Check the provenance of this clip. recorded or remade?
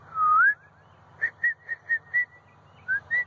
recorded